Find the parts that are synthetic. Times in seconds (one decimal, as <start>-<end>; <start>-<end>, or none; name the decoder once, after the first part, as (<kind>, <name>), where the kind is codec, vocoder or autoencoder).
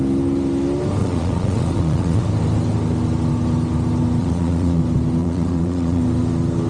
1.0-2.3 (vocoder, Vocos); 4.2-4.8; 5.2-6.0